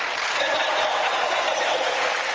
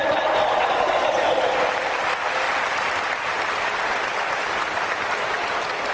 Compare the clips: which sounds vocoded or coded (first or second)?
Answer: first